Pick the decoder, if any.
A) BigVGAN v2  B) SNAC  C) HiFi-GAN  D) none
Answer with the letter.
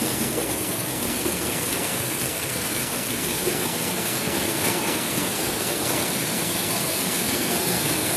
B